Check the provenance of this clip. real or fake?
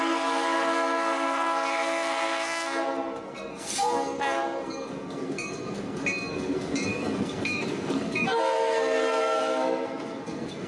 fake